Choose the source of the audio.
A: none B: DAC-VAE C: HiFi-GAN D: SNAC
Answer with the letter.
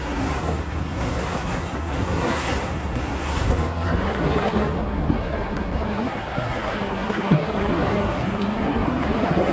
D